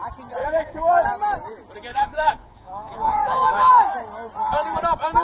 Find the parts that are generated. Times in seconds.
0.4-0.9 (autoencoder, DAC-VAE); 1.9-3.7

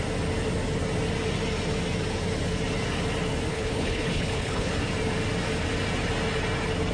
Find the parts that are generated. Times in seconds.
3.5-4.7 (codec, HILCodec)

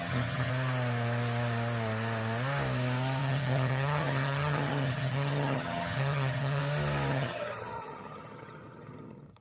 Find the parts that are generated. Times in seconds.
0.0-0.5 (vocoder, HiFi-GAN); 3.2-6.6; 7.1-9.4

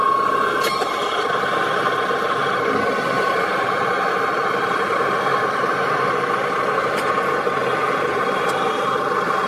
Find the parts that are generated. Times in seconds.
0.0-9.5 (vocoder, BigVGAN v2)